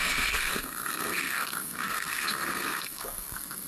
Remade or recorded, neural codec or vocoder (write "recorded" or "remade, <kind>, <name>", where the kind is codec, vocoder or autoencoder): remade, codec, SNAC